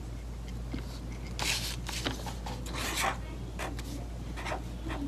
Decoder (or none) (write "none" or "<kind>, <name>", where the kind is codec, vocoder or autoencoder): none